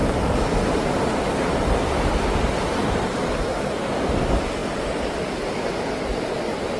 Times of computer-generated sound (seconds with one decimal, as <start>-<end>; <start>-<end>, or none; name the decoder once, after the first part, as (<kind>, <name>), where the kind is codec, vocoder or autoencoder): none